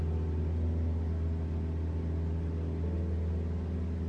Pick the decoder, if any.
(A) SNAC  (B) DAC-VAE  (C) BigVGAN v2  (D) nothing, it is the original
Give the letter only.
D